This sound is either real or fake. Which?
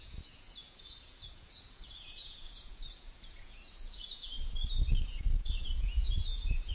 fake